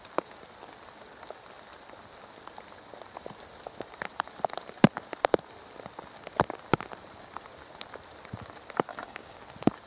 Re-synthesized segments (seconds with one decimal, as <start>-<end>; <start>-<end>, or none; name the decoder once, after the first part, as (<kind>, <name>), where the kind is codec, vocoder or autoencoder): 8.9-9.4 (codec, DAC)